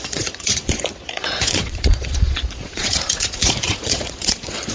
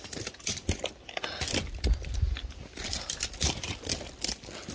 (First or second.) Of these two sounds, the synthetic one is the first